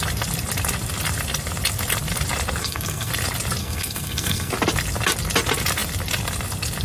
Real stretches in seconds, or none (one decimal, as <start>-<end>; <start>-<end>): 0.0-2.6; 3.1-3.6; 4.5-6.8